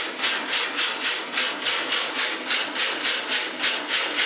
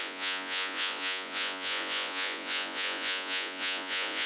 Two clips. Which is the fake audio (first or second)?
second